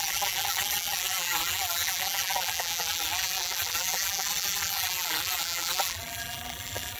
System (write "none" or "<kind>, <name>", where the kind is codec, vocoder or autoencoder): vocoder, BigVGAN v2